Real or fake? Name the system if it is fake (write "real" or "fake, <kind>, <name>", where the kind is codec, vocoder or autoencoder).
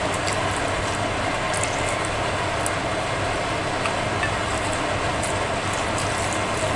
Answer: real